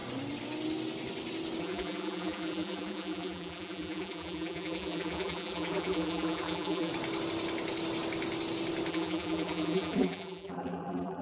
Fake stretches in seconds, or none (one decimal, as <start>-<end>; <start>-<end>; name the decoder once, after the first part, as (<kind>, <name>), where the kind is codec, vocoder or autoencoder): 1.6-6.9 (vocoder, BigVGAN v2); 8.9-11.2